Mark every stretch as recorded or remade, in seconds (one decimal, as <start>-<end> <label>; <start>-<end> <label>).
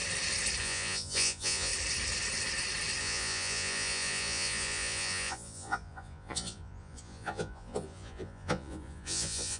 0.0-0.6 recorded; 0.6-1.7 remade; 1.7-3.0 recorded; 3.0-9.6 remade